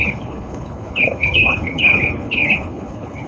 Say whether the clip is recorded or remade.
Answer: remade